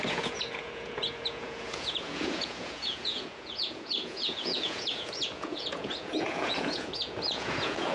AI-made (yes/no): yes